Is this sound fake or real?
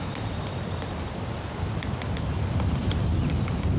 real